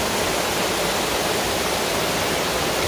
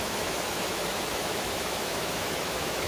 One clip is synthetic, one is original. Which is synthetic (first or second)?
second